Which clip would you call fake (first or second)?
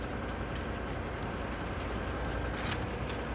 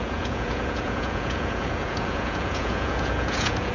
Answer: second